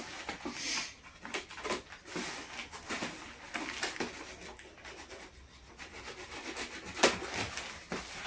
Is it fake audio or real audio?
real